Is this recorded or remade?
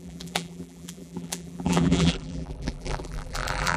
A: remade